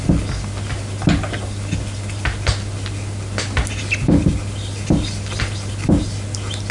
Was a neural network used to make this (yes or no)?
no